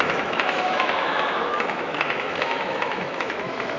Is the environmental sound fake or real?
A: fake